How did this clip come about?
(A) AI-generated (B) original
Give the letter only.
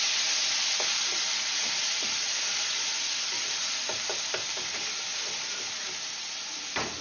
B